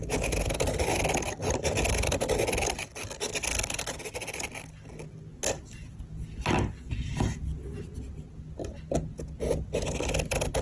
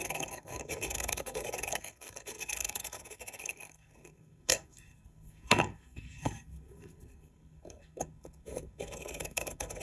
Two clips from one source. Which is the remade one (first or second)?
second